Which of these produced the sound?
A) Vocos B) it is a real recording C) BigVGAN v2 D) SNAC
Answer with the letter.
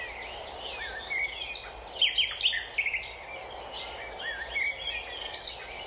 B